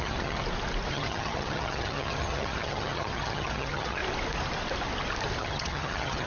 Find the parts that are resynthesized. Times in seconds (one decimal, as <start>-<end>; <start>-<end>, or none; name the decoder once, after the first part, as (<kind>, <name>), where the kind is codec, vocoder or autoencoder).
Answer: 0.0-0.4 (vocoder, HiFi-GAN); 0.9-4.0; 5.4-6.3